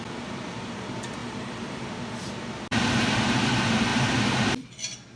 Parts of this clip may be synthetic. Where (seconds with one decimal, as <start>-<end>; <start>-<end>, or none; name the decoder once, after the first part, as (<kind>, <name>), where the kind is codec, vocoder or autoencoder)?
1.2-1.9 (vocoder, BigVGAN v2)